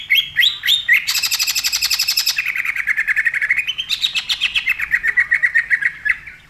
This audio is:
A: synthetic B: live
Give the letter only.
B